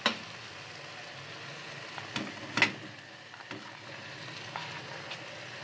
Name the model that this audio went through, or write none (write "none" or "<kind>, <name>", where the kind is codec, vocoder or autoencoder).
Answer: none